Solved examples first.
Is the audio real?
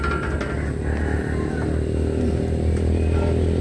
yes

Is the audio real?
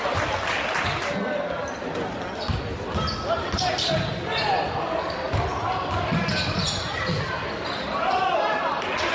yes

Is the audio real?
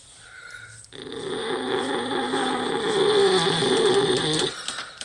yes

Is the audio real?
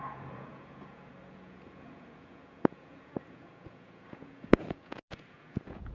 no